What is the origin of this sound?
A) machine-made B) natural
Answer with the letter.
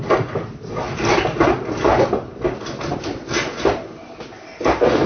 B